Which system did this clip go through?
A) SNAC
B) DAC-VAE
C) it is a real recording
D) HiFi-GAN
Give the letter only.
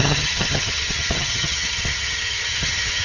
D